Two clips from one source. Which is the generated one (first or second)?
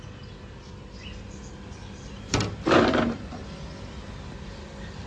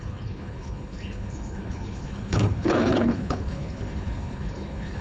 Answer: second